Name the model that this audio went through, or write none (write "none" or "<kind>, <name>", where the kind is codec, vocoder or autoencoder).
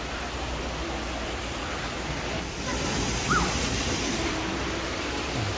none